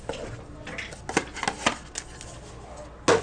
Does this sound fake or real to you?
real